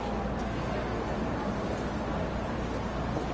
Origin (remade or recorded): recorded